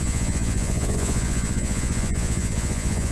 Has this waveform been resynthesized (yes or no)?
yes